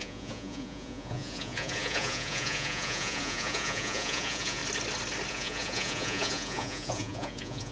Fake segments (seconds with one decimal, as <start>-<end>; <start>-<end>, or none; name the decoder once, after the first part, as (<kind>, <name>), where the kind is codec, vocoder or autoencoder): 0.0-4.6 (vocoder, Vocos); 5.3-7.7